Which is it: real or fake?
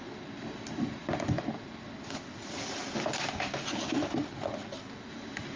real